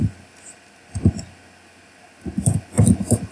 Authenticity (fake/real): real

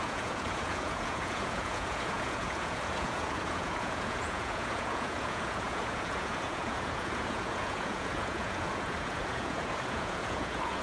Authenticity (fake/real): fake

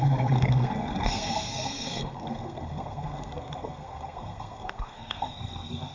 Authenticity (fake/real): fake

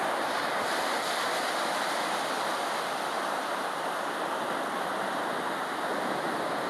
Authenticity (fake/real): real